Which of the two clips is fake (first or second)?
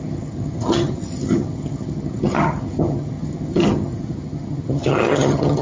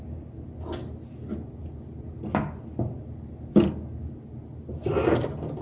first